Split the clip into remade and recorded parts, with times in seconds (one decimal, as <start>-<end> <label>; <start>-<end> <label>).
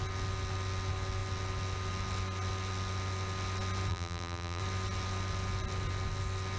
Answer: 0.0-3.9 recorded; 3.9-4.6 remade; 4.6-6.6 recorded